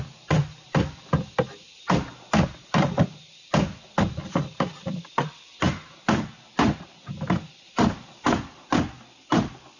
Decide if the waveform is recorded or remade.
recorded